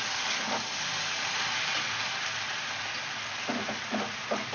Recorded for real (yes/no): yes